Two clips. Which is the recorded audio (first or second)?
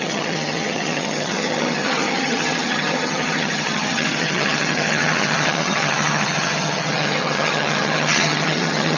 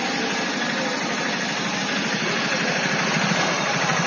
second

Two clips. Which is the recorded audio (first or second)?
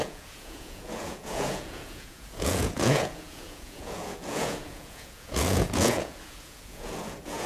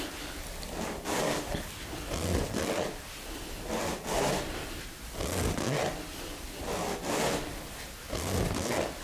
second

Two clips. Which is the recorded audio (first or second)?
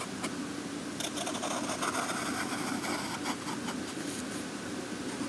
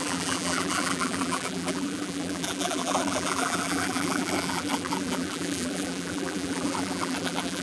first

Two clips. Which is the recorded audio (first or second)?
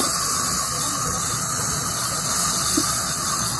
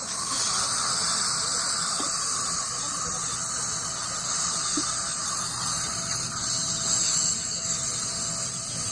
second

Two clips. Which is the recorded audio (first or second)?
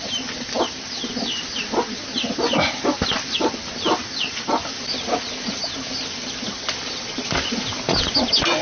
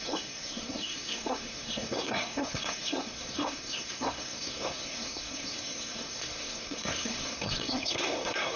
first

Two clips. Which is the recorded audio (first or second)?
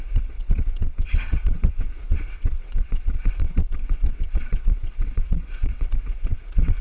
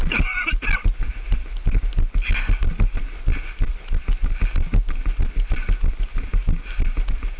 second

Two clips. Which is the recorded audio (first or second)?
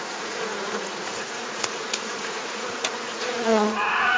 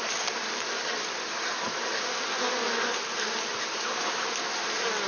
second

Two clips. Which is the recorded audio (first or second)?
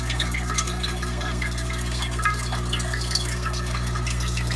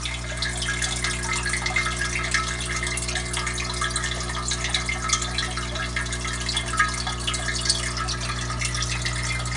second